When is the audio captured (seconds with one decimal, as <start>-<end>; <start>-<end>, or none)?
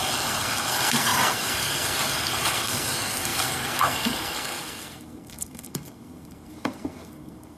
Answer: none